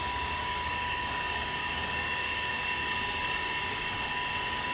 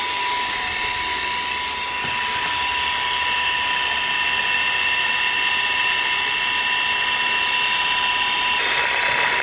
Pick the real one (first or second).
second